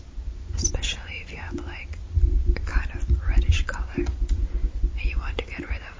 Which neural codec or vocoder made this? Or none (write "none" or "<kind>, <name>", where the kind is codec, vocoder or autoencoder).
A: none